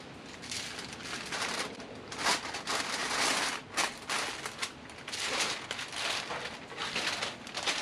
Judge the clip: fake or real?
real